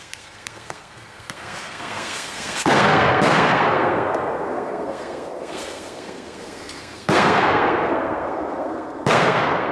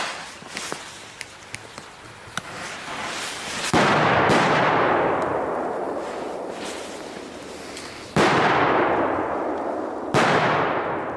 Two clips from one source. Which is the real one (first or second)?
second